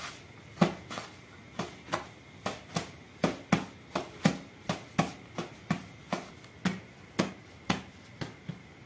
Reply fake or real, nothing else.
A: real